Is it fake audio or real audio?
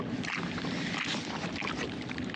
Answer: real